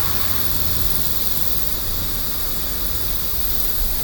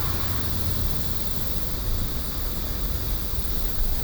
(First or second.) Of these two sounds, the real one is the first